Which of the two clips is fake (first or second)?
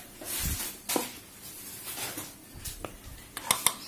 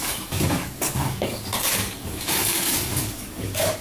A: second